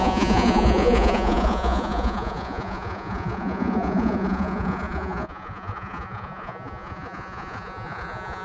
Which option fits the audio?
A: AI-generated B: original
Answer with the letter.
A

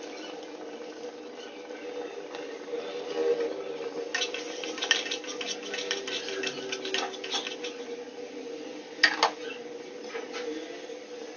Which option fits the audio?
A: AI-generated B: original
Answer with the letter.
B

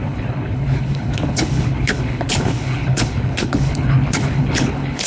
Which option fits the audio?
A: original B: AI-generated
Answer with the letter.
B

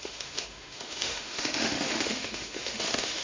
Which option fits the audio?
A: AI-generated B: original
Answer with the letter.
A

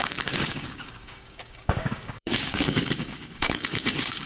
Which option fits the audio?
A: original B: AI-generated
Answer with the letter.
B